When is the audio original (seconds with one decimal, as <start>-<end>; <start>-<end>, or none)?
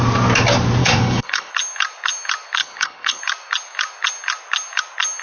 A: 0.0-0.8; 1.5-2.6; 3.2-5.2